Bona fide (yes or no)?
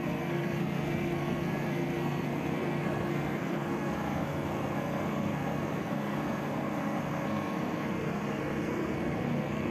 no